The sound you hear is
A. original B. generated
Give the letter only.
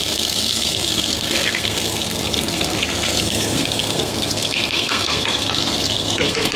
B